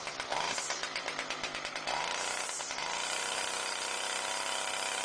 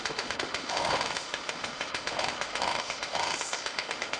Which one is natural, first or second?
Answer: first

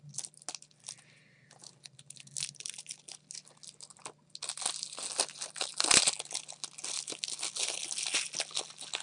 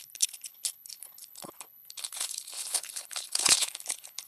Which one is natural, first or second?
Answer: first